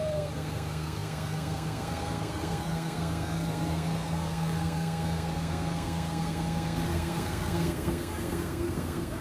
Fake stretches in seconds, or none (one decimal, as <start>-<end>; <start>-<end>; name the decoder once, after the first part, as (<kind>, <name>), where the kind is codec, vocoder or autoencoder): 0.0-9.2 (codec, SNAC)